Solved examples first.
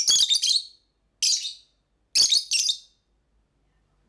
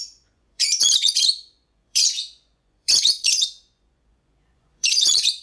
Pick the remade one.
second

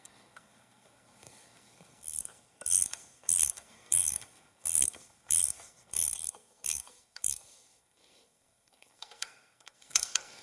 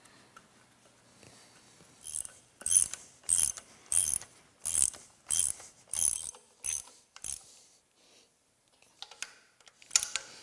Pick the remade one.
first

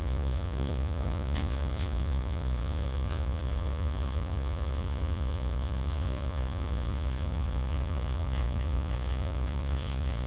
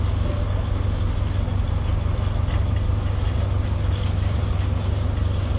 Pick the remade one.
first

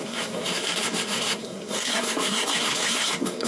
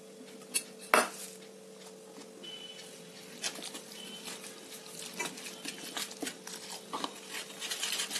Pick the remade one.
first